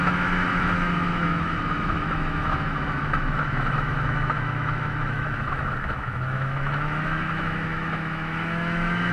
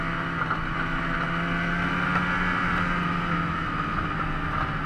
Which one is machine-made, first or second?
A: first